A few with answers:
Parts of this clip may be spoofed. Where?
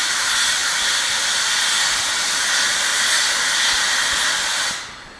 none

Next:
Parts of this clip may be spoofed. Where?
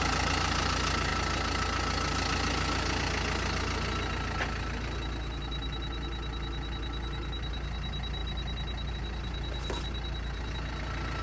none